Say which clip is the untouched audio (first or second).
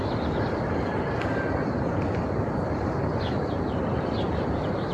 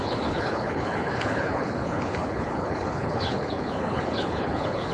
first